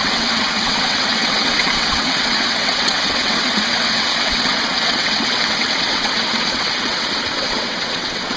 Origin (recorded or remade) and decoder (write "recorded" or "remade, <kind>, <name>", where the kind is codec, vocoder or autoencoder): remade, vocoder, WaveNeXt